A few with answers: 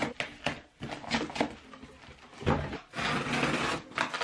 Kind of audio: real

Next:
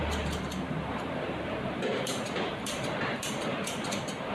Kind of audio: fake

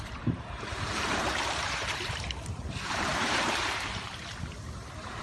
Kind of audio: fake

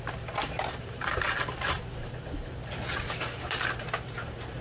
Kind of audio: fake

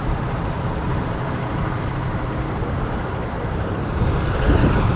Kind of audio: fake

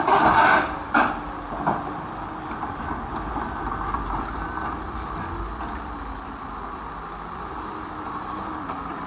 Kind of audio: real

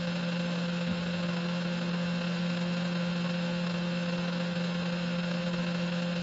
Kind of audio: real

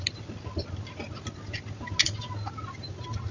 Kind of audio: real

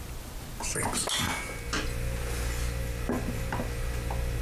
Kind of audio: real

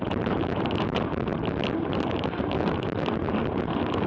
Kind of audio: fake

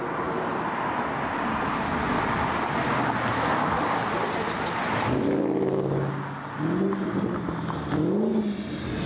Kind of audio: real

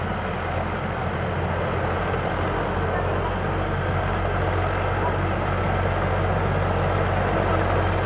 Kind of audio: real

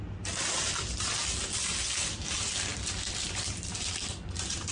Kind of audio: fake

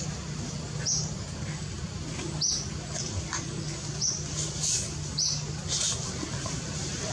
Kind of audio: real